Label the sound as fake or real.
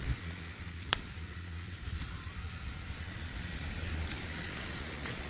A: fake